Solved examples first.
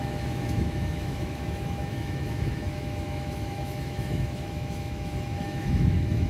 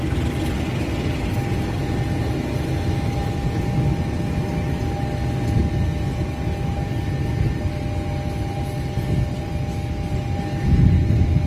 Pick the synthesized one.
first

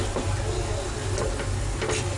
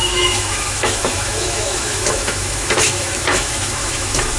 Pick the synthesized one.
second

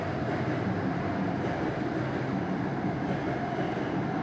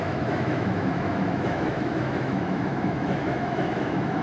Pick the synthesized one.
second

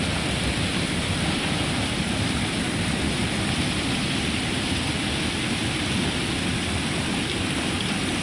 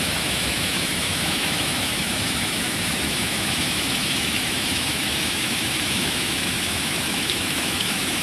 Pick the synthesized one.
second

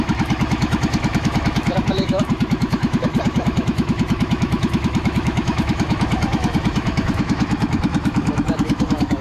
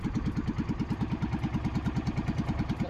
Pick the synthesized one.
first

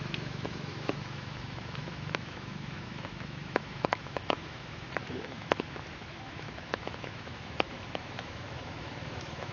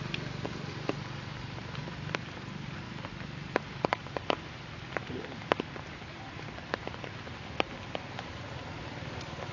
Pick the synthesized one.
first